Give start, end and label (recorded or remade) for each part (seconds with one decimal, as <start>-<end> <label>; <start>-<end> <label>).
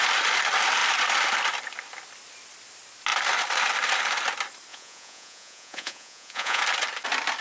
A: 0.0-4.7 recorded; 4.7-6.6 remade; 6.6-7.4 recorded